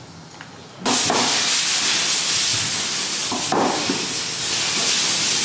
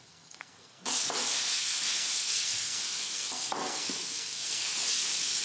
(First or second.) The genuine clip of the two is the first